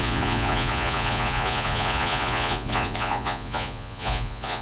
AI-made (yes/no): yes